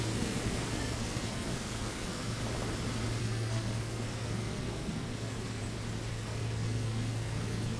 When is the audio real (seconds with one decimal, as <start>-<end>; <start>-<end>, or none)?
2.4-3.2; 5.6-6.1

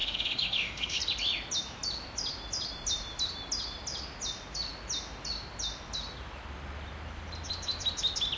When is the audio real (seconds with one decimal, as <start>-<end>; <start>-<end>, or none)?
1.0-8.4

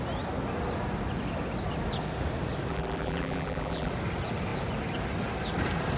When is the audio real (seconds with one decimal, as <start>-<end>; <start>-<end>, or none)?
0.0-2.7; 3.9-6.0

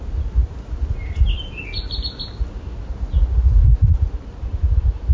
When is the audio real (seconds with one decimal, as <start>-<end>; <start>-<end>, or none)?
0.0-5.1